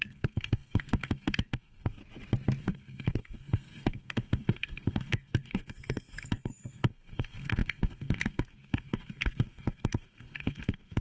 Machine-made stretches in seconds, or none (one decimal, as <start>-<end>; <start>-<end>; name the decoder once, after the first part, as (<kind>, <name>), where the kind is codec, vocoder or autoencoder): 0.0-2.0 (codec, SNAC); 2.6-11.0